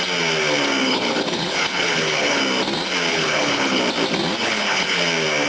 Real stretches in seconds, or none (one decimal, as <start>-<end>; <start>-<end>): 0.0-0.8; 2.4-3.1; 3.8-4.4; 5.0-5.5